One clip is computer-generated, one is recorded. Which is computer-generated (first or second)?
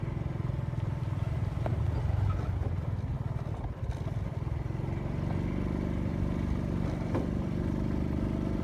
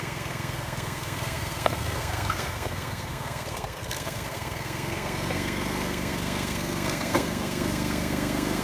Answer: second